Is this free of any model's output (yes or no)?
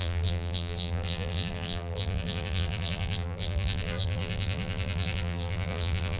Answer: no